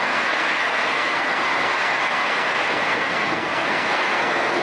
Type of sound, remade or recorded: remade